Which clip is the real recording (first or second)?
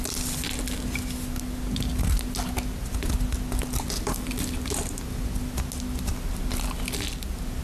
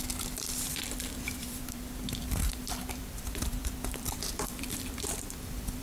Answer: first